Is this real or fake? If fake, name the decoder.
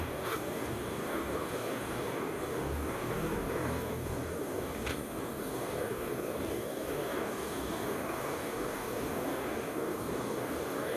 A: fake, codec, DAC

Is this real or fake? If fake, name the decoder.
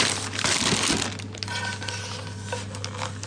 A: real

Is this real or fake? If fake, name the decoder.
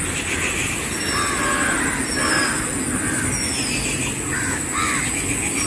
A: real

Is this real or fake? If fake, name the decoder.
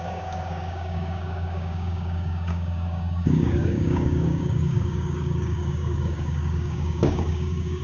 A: fake, codec, DAC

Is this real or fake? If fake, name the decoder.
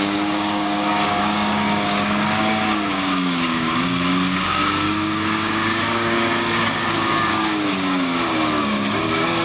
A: fake, codec, DAC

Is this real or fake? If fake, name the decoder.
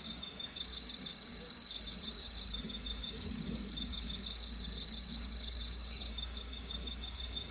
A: fake, codec, DAC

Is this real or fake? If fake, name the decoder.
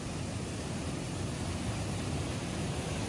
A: real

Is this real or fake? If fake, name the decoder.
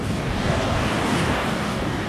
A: fake, codec, DAC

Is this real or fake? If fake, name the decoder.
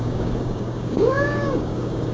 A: fake, codec, DAC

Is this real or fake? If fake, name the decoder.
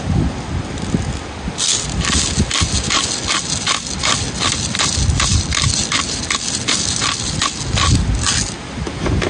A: real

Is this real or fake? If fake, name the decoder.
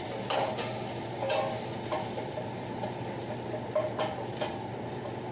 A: real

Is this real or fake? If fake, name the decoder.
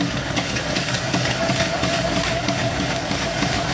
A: fake, codec, DAC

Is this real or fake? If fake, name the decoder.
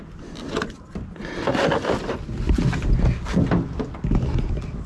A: real